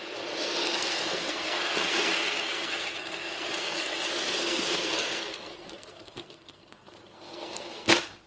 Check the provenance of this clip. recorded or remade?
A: remade